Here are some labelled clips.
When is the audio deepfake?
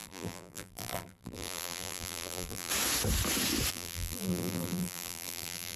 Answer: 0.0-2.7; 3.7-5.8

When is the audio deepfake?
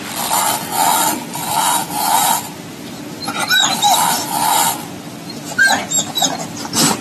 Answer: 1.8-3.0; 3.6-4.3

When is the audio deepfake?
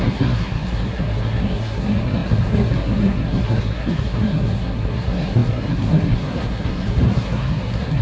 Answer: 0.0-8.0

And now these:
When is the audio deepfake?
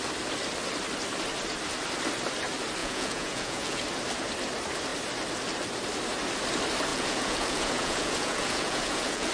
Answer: 2.8-3.8; 6.9-9.3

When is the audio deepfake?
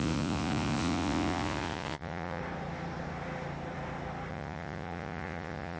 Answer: 0.0-2.4; 4.3-5.8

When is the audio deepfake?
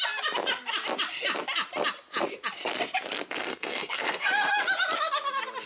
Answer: 3.4-4.5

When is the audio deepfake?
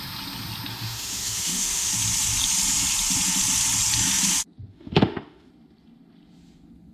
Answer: 0.7-1.9; 4.7-5.5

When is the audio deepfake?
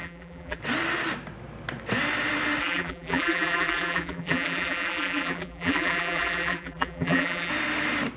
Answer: 0.0-0.6; 2.6-7.5